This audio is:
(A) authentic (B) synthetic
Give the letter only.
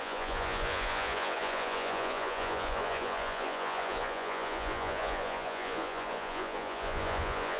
B